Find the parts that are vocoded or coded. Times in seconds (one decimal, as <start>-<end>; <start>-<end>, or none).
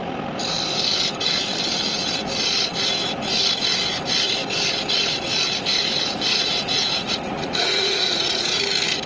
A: 6.3-8.6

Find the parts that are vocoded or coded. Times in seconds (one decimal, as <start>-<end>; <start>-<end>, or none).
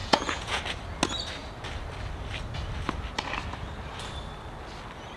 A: 0.0-0.6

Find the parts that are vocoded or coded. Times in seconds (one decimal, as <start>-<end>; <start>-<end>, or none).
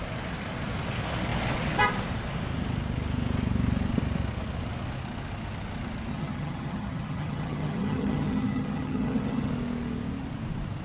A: 6.1-9.5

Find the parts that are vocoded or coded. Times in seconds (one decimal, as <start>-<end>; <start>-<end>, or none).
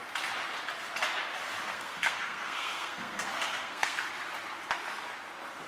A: 1.7-4.1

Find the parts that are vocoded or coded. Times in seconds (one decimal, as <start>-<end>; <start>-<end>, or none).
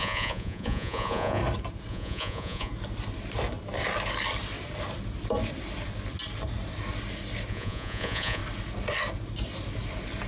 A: 0.0-1.4; 1.9-2.7; 7.5-8.4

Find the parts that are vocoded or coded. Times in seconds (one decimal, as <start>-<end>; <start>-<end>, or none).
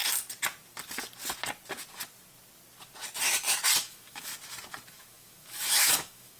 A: 3.8-4.3; 4.9-6.4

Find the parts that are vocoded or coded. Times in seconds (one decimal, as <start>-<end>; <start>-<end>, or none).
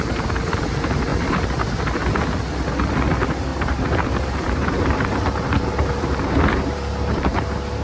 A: 1.1-1.8; 3.5-6.9